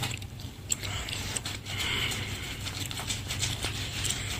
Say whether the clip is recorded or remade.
recorded